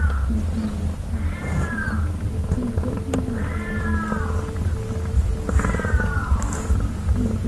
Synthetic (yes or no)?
no